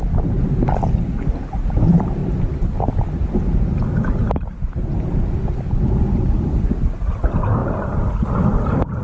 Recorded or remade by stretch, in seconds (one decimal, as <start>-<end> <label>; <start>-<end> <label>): 0.0-9.0 recorded